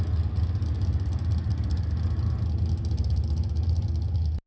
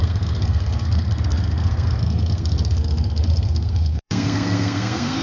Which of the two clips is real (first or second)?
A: first